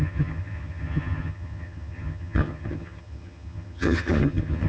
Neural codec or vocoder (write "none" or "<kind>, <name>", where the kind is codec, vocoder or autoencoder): vocoder, HiFi-GAN